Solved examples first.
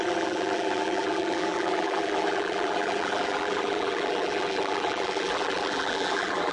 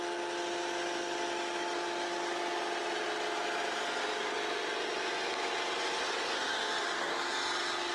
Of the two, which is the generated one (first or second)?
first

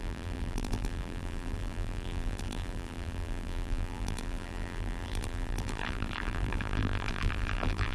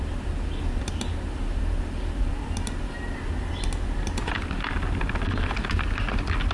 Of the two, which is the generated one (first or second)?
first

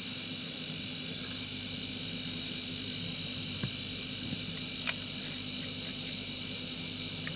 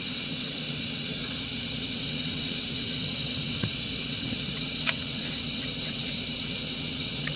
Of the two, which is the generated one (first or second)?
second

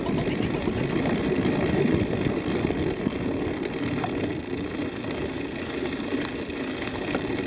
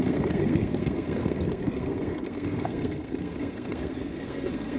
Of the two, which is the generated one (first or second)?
second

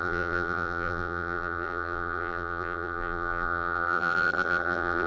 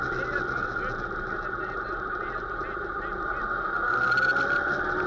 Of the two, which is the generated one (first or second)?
first